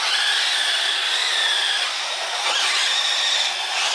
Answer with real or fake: fake